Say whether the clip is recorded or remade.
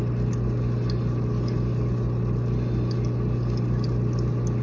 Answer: recorded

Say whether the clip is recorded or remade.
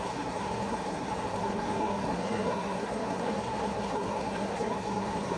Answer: remade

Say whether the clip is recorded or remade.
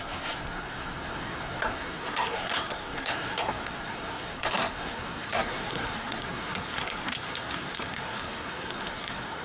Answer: remade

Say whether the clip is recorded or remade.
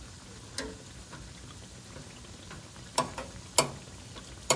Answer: recorded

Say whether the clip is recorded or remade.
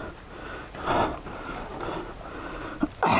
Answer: recorded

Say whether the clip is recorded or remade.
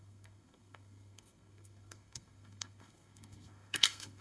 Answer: remade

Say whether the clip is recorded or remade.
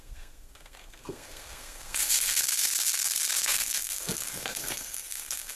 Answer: remade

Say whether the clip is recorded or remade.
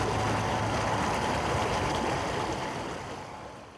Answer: recorded